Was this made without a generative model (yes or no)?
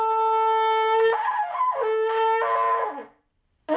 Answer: yes